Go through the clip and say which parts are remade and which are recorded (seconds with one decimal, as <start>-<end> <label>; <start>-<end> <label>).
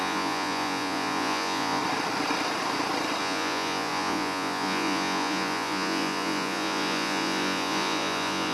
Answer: 0.0-1.8 remade; 1.8-3.2 recorded; 3.2-8.5 remade